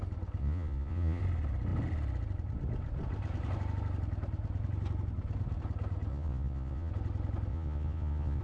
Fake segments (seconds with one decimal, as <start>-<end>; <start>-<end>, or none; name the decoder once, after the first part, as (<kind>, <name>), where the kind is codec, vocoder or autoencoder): 0.4-1.2 (vocoder, Vocos); 6.1-6.9; 7.5-8.4